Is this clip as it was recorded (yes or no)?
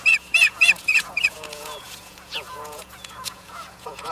no